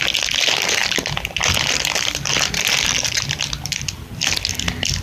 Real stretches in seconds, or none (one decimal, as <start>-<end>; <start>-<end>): 0.0-0.8; 3.2-5.0